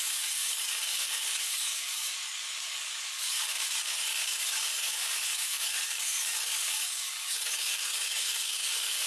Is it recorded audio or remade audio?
remade